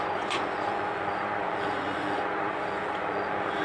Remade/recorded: remade